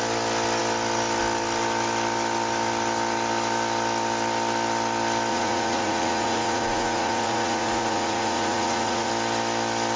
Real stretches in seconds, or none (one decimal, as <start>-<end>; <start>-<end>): 0.0-5.3; 9.1-10.0